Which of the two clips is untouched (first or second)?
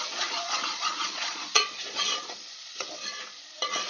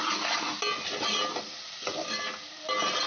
second